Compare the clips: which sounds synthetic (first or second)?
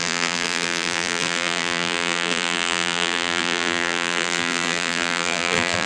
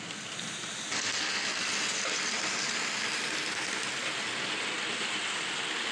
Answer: first